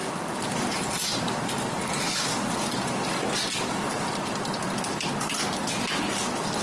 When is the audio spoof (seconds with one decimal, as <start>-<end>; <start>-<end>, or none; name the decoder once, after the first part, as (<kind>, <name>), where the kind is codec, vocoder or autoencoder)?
none

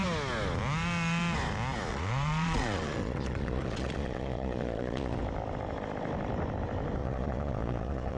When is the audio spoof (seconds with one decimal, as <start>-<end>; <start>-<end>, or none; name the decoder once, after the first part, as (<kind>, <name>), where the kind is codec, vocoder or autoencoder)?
1.9-5.2 (vocoder, Vocos); 7.0-8.2

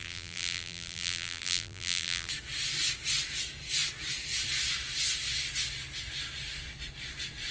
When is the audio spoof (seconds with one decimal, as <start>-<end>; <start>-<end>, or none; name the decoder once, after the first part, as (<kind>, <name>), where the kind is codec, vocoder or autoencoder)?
0.0-2.3 (vocoder, BigVGAN v2)

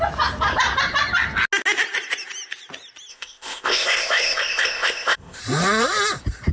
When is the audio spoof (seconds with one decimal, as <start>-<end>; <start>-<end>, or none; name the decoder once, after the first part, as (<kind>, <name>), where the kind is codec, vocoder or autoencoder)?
3.1-5.4 (codec, ZipCodec)

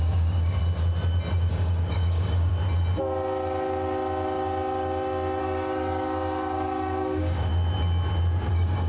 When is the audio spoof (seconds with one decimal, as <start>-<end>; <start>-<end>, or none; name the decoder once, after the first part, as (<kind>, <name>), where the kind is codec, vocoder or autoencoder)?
0.0-0.6 (codec, DAC); 1.5-2.5; 5.4-7.5; 8.5-8.9

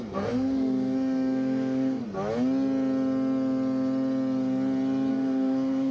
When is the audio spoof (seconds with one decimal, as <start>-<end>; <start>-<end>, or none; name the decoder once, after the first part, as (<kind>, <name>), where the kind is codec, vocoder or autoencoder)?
0.0-2.0 (codec, SNAC); 5.1-5.9

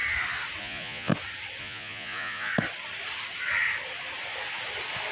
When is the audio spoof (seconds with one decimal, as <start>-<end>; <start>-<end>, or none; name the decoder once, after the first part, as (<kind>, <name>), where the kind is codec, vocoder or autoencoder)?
0.6-1.1 (vocoder, Vocos); 1.6-2.5